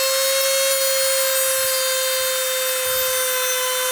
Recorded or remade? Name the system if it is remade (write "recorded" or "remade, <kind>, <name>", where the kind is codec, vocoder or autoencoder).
recorded